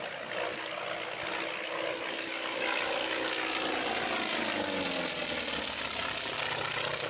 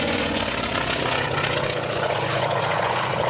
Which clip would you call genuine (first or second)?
first